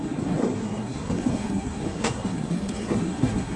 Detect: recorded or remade remade